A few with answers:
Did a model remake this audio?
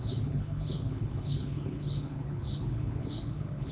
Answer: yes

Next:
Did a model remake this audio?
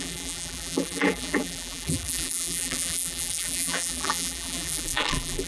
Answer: yes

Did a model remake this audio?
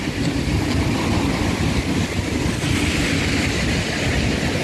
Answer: no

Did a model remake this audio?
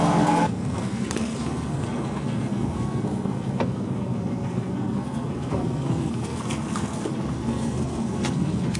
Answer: yes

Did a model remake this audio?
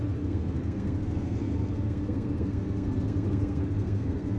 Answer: yes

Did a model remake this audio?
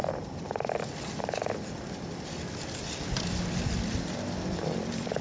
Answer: no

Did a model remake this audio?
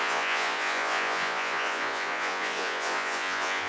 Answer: yes